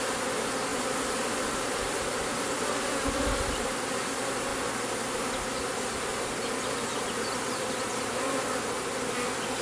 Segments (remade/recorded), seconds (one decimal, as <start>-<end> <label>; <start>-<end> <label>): 0.0-0.7 recorded; 0.7-4.1 remade; 4.1-6.9 recorded; 6.9-8.5 remade; 8.5-9.6 recorded